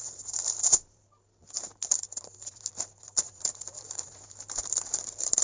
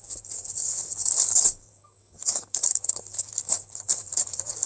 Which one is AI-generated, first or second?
second